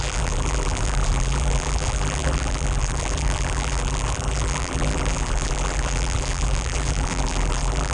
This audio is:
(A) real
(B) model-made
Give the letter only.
B